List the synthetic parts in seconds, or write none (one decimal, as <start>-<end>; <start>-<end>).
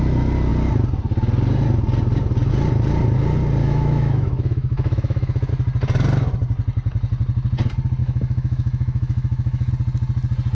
3.6-5.5; 8.0-9.7